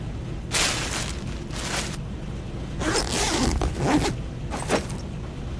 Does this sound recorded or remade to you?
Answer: recorded